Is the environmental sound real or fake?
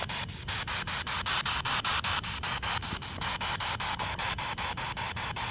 real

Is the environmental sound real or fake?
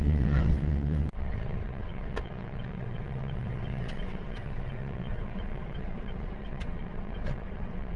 fake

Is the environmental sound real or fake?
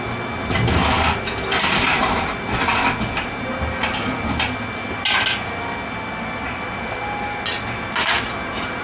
real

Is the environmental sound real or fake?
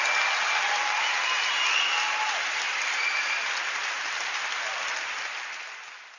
real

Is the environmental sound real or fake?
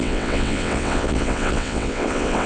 fake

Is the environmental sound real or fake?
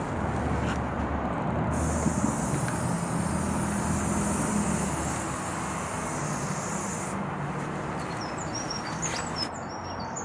real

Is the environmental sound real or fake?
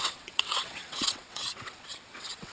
fake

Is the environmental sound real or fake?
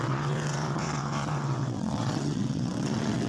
fake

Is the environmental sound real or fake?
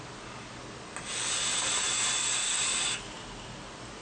real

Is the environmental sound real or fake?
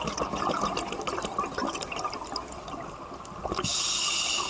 real